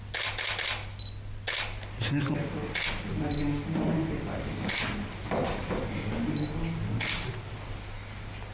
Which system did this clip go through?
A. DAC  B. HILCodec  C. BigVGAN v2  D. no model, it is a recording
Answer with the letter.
D